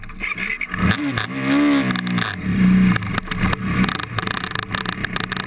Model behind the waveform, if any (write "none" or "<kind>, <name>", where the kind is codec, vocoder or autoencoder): none